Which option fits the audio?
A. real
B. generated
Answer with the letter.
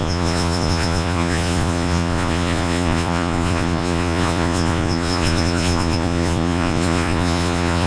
B